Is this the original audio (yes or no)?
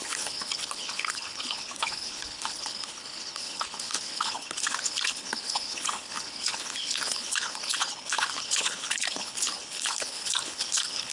no